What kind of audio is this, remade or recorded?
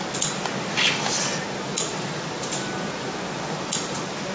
recorded